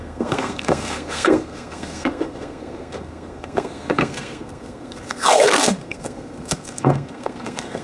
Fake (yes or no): yes